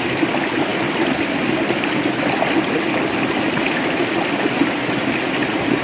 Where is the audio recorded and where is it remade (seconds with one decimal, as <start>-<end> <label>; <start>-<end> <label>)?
0.0-5.8 recorded